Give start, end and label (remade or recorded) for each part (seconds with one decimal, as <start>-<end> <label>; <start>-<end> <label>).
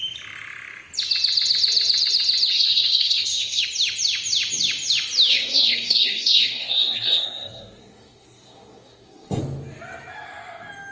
0.0-2.5 recorded; 2.5-3.6 remade; 3.6-5.3 recorded; 5.3-9.4 remade; 9.4-10.9 recorded